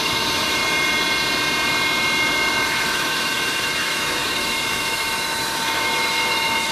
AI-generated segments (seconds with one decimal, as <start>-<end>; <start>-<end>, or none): 0.0-0.6; 2.9-6.7